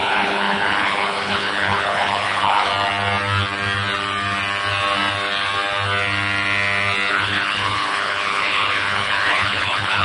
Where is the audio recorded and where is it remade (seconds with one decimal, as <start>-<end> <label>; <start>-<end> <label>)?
0.0-2.7 remade; 2.7-7.1 recorded; 7.1-10.0 remade